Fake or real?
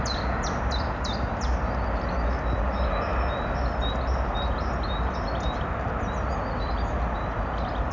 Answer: real